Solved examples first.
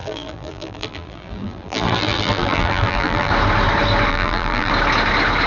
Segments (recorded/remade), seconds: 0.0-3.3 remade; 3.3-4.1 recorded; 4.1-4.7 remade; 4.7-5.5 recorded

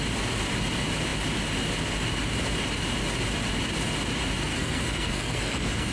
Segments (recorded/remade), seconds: 0.0-4.4 recorded; 4.4-5.9 remade

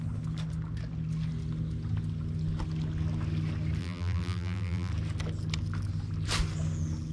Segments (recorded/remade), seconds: 0.0-3.8 recorded; 3.8-4.9 remade; 4.9-7.1 recorded

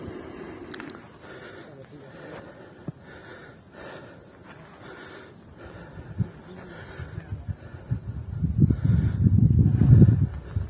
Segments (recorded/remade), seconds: 0.0-10.7 recorded